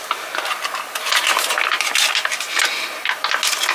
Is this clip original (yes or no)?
yes